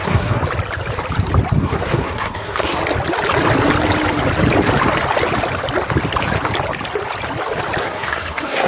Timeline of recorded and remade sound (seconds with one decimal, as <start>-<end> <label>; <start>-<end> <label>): 0.0-0.4 remade; 0.4-1.6 recorded; 1.6-2.8 remade; 2.8-7.8 recorded; 7.8-8.7 remade